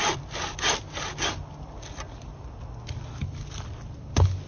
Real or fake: real